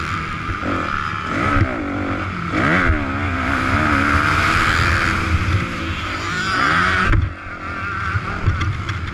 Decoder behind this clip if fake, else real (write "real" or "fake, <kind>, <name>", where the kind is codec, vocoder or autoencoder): real